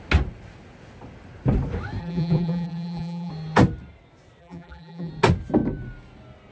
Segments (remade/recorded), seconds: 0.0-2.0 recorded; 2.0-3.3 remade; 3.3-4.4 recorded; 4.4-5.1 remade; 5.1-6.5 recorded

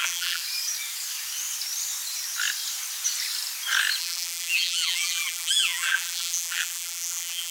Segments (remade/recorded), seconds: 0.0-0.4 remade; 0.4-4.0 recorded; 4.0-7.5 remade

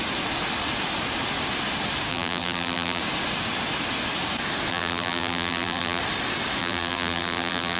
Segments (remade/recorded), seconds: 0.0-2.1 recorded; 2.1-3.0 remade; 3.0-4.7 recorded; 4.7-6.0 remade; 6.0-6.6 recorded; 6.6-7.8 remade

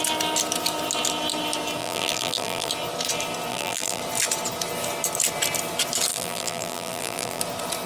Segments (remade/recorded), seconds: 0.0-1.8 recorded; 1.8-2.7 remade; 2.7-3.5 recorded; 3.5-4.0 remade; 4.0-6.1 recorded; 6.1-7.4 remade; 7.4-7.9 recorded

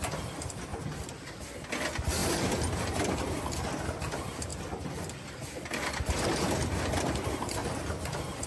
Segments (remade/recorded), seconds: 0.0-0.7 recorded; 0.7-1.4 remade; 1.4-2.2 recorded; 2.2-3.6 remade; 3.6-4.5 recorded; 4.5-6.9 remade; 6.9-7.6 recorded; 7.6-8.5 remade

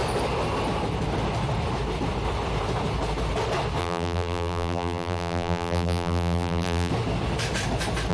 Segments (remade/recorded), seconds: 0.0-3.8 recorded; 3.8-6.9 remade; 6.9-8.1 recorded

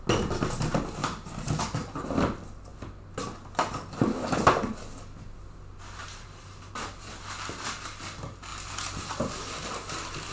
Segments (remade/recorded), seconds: 0.0-1.0 recorded; 1.0-1.6 remade; 1.6-6.0 recorded; 6.0-6.9 remade; 6.9-10.3 recorded

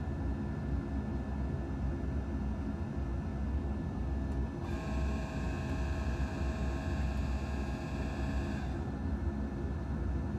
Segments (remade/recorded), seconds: 0.0-3.3 recorded; 3.3-4.2 remade; 4.2-10.4 recorded